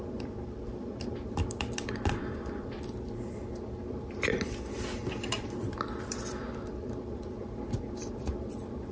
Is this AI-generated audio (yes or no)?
yes